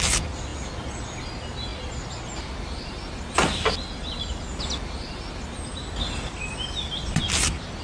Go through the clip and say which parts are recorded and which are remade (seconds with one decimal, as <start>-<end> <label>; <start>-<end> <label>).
0.0-7.8 recorded